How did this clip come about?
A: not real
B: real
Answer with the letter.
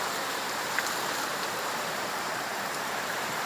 A